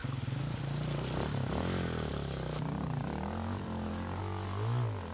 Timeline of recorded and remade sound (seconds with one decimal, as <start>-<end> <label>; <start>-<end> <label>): 0.0-2.1 recorded; 2.1-4.2 remade; 4.2-5.1 recorded